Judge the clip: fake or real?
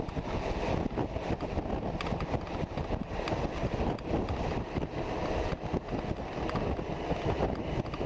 real